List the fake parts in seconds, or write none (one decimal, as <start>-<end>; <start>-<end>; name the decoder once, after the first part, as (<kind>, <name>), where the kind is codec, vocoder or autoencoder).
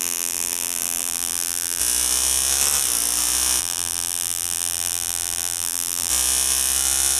0.0-1.8 (vocoder, BigVGAN v2); 3.6-6.1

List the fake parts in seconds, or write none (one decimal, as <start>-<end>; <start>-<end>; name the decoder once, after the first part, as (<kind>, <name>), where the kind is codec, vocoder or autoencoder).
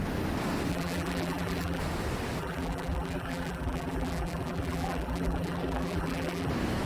0.7-1.8 (vocoder, BigVGAN v2); 2.4-6.5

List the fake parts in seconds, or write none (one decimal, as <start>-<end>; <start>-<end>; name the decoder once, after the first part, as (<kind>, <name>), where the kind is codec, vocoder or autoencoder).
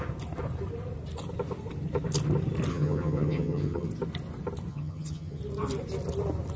2.7-3.9 (vocoder, HiFi-GAN); 4.7-5.4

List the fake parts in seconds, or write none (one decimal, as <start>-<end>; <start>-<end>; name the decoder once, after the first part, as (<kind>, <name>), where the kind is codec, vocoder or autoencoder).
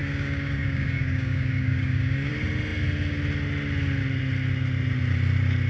0.0-2.3 (codec, DAC)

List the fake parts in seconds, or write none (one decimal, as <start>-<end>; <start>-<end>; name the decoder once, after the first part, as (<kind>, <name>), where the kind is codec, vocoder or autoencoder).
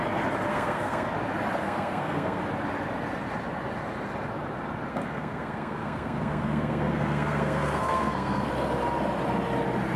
0.5-1.1 (codec, SNAC); 1.6-2.4; 4.9-8.5